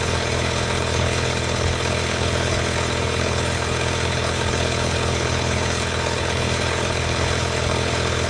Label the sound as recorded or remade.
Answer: remade